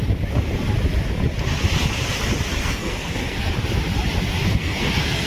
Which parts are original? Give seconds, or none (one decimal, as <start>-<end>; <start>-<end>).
0.0-2.6; 3.5-4.5